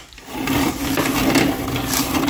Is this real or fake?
real